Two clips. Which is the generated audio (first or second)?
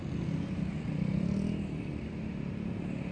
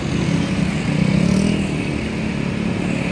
first